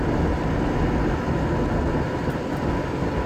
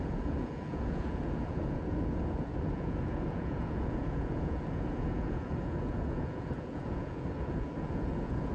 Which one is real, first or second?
first